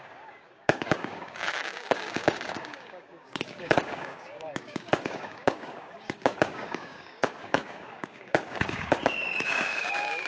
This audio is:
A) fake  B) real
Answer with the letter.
A